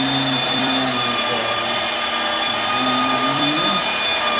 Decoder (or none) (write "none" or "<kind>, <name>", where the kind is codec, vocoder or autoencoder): vocoder, BigVGAN v2